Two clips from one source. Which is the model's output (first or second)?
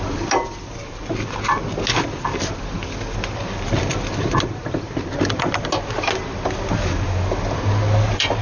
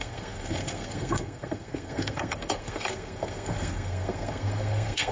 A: second